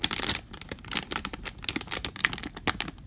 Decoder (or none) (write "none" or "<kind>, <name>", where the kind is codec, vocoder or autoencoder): none